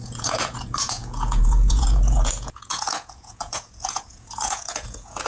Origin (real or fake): fake